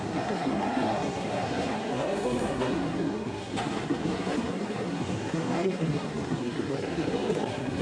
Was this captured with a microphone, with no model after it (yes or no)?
no